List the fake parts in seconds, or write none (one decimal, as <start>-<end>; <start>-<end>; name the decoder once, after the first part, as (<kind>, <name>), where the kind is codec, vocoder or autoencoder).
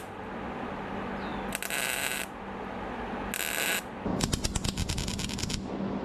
none